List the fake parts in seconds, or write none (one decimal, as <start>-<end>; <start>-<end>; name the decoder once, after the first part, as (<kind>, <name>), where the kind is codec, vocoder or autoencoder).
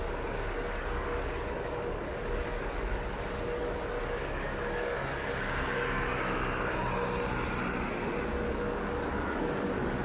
0.0-6.1 (codec, DAC); 8.5-10.0